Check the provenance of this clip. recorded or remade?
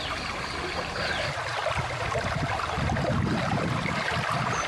recorded